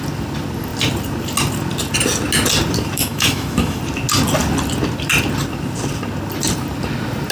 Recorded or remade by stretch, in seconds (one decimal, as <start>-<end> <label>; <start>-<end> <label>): 0.0-3.0 recorded; 3.0-3.8 remade; 3.8-7.3 recorded